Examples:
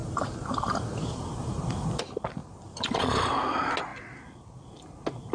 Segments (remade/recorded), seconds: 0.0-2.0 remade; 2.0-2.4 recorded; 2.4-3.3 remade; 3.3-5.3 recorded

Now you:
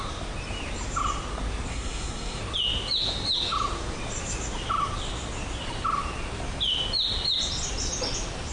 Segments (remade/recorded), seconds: 0.0-1.7 recorded; 1.7-2.4 remade; 2.4-8.5 recorded

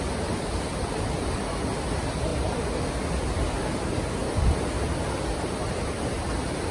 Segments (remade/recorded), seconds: 0.0-0.7 recorded; 0.7-1.4 remade; 1.4-2.3 recorded; 2.3-2.9 remade; 2.9-6.7 recorded

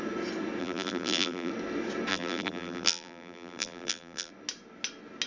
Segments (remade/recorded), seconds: 0.0-0.6 recorded; 0.6-1.5 remade; 1.5-2.1 recorded; 2.1-4.3 remade; 4.3-5.3 recorded